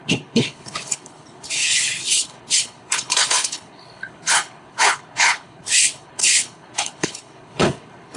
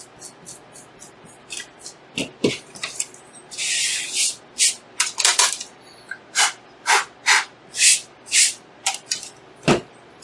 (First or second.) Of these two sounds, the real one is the second